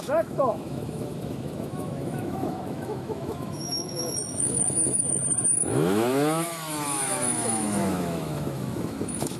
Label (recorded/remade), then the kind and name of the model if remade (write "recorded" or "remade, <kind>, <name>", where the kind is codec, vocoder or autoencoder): remade, autoencoder, DAC-VAE